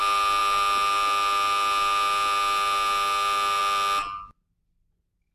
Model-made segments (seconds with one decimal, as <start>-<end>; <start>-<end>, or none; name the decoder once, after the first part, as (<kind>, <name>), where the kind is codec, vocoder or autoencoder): none